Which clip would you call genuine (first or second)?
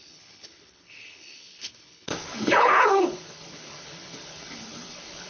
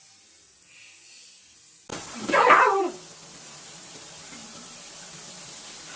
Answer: second